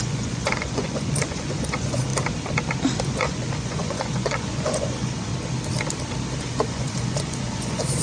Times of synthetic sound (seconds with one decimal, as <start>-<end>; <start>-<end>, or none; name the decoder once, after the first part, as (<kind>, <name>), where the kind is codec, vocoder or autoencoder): 0.0-2.1 (vocoder, Vocos); 3.0-5.3; 6.4-8.0